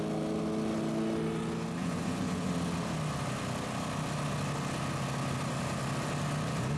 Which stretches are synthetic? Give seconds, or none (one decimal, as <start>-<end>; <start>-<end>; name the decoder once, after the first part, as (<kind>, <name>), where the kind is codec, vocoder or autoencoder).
1.8-2.5 (vocoder, Vocos)